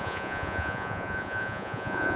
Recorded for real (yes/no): no